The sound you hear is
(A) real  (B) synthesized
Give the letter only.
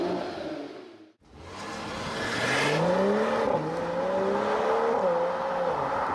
A